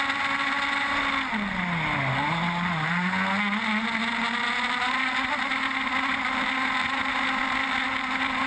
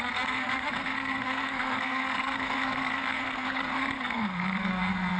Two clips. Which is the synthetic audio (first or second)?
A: second